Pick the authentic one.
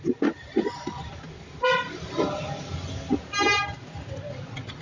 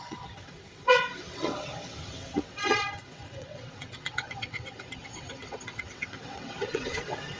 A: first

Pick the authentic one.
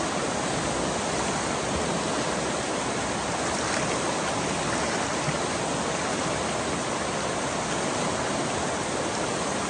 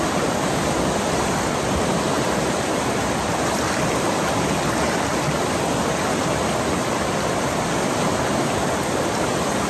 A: first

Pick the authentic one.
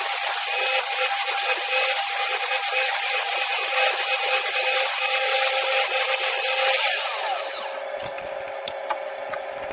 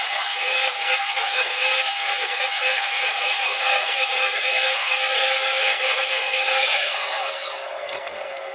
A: first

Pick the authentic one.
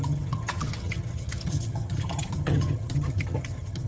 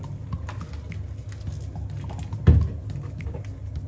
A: second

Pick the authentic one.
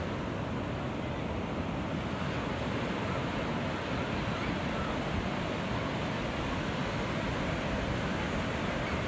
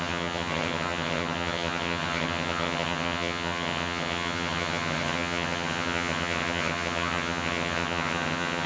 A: first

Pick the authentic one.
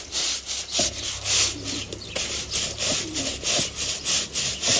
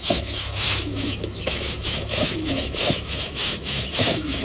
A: first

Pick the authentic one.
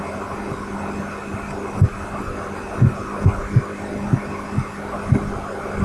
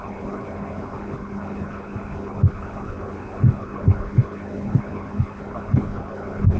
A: first